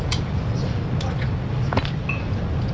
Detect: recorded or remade recorded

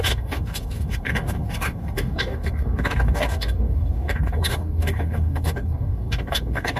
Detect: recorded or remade remade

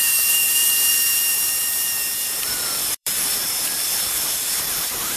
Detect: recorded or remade remade